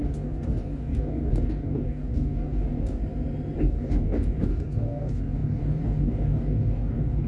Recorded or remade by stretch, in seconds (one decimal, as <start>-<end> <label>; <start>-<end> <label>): 0.0-3.0 remade; 3.0-3.6 recorded; 3.6-7.3 remade